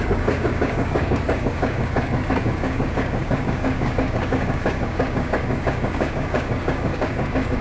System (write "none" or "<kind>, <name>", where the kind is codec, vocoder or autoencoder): codec, DAC